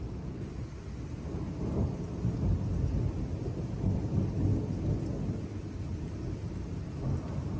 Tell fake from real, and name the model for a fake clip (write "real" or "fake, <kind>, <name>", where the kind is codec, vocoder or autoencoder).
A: real